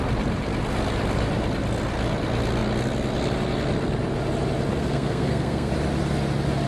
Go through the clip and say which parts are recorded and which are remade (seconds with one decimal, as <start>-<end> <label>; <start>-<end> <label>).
0.0-4.7 recorded; 4.7-5.7 remade; 5.7-6.7 recorded

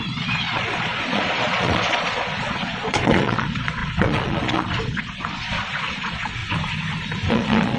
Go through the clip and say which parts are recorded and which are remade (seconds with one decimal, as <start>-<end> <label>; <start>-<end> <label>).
0.0-6.4 remade; 6.4-7.3 recorded; 7.3-7.8 remade

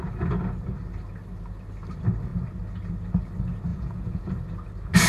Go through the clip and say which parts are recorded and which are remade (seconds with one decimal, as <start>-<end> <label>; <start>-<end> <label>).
0.0-3.7 recorded; 3.7-4.3 remade; 4.3-5.1 recorded

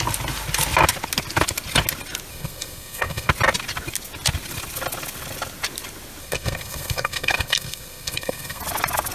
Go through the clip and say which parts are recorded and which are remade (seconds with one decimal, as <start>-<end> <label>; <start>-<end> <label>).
0.0-2.3 recorded; 2.3-3.3 remade; 3.3-6.2 recorded; 6.2-8.6 remade; 8.6-9.1 recorded

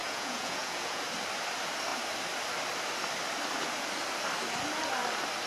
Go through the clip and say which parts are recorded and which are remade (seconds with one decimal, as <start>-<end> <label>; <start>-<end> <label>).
0.0-1.0 remade; 1.0-5.5 recorded

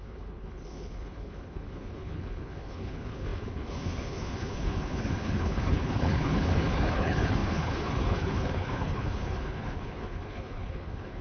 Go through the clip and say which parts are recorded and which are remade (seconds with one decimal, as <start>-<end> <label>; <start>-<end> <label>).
0.0-11.2 remade

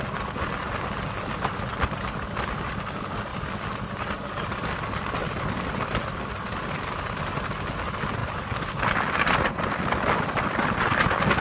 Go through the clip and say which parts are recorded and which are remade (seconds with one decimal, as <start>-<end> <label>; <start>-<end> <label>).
0.0-3.3 recorded; 3.3-4.2 remade; 4.2-5.2 recorded; 5.2-7.2 remade; 7.2-11.4 recorded